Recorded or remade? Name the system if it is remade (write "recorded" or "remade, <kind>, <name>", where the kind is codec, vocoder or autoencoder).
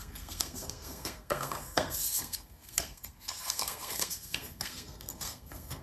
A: remade, codec, SNAC